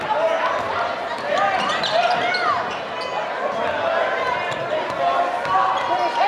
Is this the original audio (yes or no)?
yes